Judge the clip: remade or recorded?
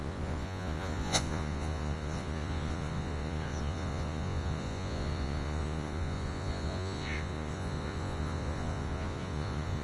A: remade